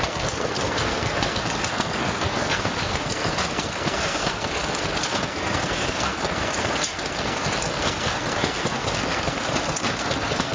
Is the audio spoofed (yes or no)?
yes